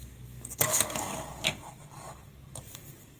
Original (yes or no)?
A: no